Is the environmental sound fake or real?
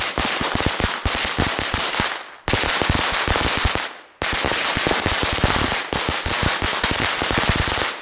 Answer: real